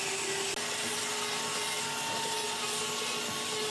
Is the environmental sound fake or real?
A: real